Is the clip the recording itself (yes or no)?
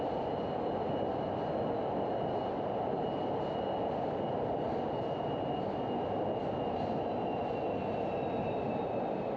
yes